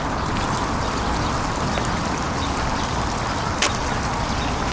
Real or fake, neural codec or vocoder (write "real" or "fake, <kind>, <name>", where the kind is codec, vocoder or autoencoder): real